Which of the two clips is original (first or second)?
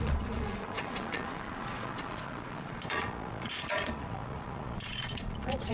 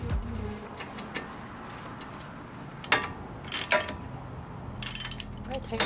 second